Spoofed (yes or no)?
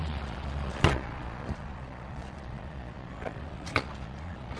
yes